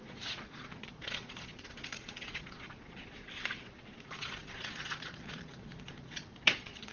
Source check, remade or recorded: remade